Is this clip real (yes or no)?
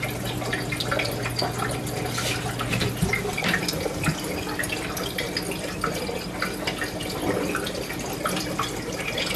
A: yes